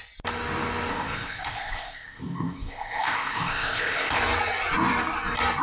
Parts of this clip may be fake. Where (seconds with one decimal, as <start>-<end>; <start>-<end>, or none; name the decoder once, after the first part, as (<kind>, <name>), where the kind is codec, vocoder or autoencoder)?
0.9-4.2 (codec, ZipCodec)